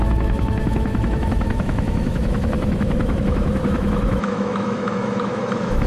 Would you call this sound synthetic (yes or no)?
yes